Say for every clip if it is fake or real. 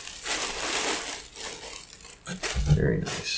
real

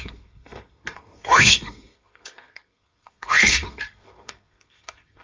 fake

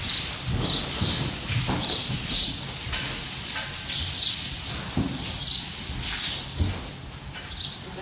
real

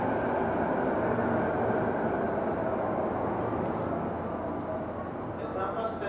real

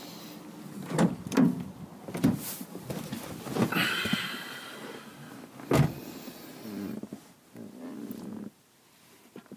real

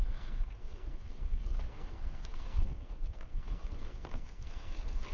fake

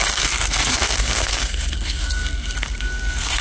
fake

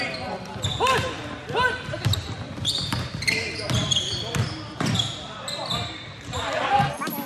real